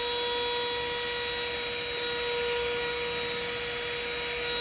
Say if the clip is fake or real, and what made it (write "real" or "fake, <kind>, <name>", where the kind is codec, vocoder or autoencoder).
real